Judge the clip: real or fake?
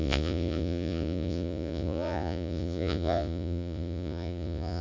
fake